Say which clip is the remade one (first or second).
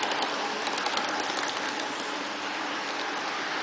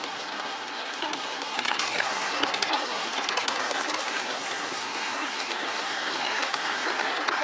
second